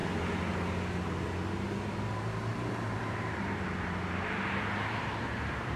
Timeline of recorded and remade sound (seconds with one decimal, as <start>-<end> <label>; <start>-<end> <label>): 0.0-3.0 recorded; 3.0-5.8 remade